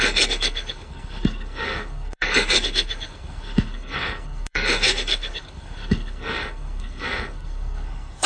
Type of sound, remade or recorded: remade